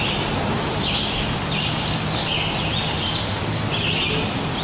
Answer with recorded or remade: recorded